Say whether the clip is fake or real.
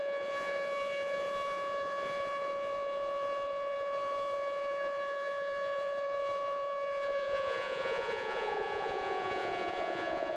fake